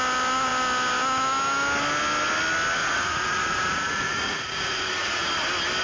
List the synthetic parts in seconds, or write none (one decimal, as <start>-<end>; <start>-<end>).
2.8-5.3